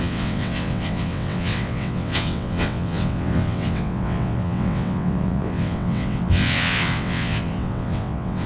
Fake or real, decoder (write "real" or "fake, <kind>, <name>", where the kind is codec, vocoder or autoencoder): fake, vocoder, WaveNeXt